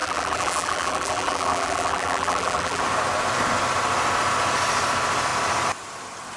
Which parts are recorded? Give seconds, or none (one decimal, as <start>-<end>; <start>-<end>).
2.8-6.4